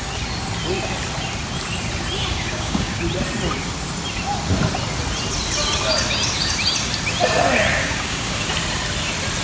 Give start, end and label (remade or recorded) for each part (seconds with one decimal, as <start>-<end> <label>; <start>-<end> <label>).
0.0-2.3 recorded; 2.3-3.0 remade; 3.0-7.8 recorded; 7.8-8.4 remade; 8.4-9.4 recorded